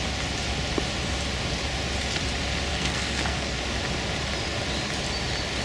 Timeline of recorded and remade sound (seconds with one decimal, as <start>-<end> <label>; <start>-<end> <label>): 0.0-2.7 recorded; 2.7-3.6 remade; 3.6-5.6 recorded